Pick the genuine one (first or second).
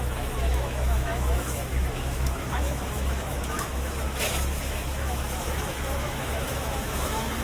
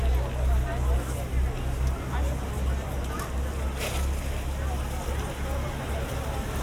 second